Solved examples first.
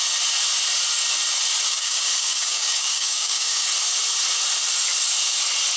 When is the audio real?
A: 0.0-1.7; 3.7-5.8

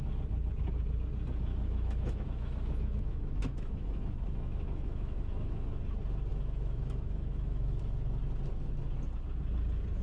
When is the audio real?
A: 0.0-1.5; 5.8-6.3; 7.8-10.0

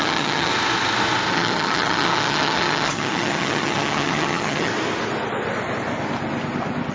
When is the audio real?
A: 0.5-1.3; 4.7-6.9

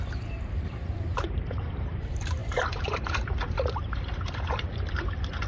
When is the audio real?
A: none

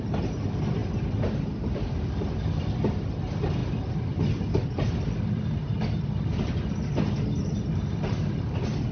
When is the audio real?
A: 0.0-8.9